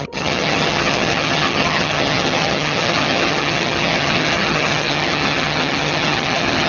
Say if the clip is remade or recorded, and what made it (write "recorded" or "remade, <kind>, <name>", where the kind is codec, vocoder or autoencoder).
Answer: remade, vocoder, HiFi-GAN